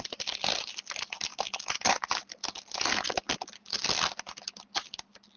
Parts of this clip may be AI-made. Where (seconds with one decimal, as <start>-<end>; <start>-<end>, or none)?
none